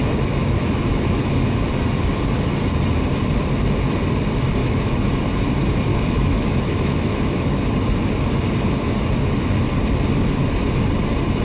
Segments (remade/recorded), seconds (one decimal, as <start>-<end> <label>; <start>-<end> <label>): 0.0-0.4 recorded; 0.4-1.2 remade; 1.2-4.6 recorded; 4.6-5.1 remade; 5.1-5.9 recorded; 5.9-7.6 remade; 7.6-11.4 recorded